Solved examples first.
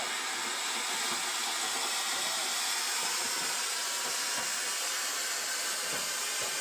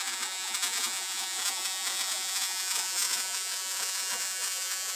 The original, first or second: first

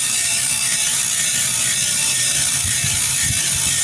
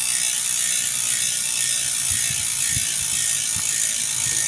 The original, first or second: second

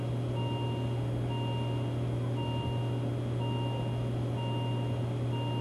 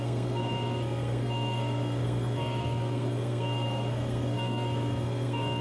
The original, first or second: first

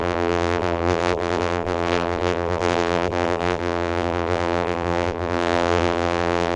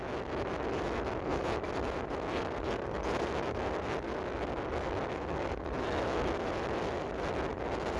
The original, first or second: second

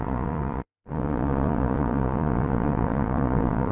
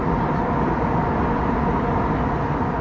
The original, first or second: second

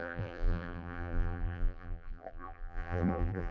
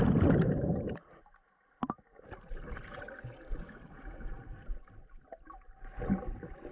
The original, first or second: second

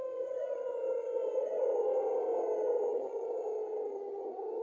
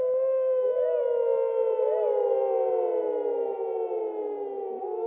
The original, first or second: second